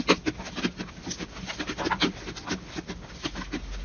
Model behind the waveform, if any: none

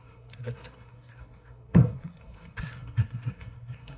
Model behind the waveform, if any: codec, SNAC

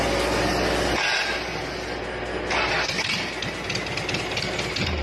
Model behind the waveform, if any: none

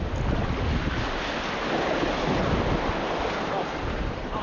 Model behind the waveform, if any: none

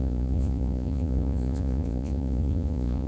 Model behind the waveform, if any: vocoder, Vocos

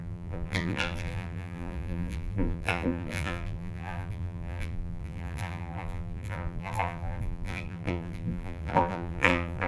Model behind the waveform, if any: vocoder, BigVGAN v2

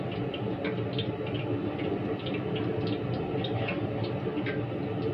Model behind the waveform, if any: none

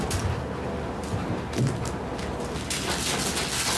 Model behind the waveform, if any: none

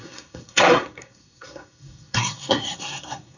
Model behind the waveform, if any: codec, SNAC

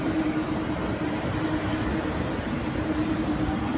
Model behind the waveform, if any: vocoder, BigVGAN v2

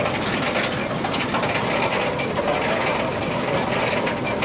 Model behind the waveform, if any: none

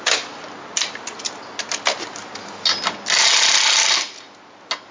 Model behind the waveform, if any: none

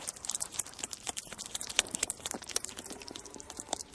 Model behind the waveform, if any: vocoder, BigVGAN v2